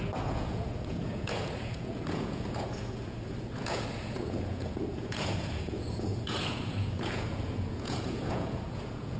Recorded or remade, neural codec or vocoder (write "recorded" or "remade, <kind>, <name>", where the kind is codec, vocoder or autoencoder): remade, vocoder, Vocos